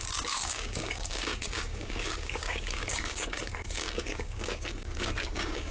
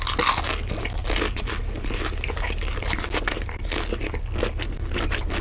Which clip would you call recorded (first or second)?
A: second